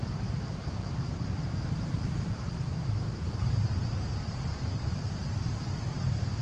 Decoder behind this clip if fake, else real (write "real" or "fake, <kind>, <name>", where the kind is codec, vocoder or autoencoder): fake, vocoder, BigVGAN v2